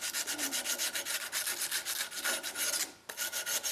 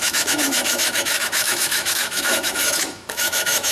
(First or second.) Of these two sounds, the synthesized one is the second